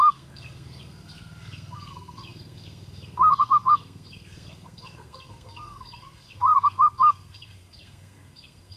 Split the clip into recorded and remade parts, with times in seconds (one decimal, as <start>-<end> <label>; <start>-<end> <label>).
0.0-8.8 remade